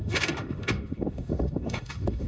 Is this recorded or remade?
remade